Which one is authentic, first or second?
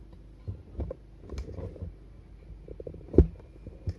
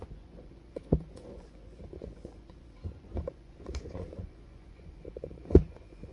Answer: first